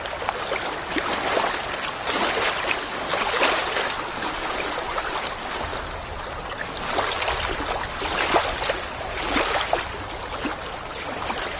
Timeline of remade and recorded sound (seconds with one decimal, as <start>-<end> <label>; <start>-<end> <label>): 0.0-11.6 recorded